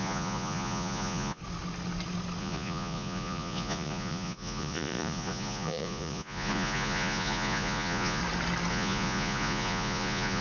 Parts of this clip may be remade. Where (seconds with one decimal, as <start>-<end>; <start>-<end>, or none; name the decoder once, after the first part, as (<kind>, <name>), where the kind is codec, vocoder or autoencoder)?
0.0-1.4 (vocoder, Vocos); 2.4-8.2; 8.7-10.4